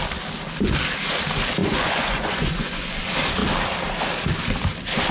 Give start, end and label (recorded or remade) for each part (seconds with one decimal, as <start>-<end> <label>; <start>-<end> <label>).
0.0-1.6 recorded; 1.6-3.0 remade; 3.0-5.1 recorded